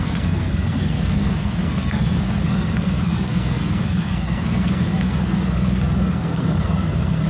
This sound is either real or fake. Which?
fake